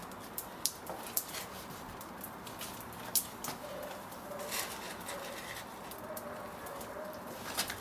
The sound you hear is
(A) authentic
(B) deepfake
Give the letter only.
A